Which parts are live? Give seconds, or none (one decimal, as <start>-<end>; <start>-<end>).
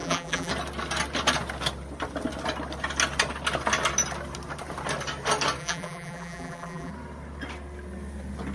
0.5-5.6; 6.9-8.5